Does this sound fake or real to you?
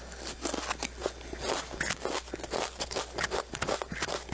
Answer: real